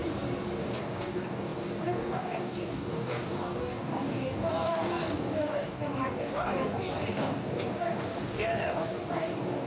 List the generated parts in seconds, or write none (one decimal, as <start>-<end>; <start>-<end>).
0.6-9.7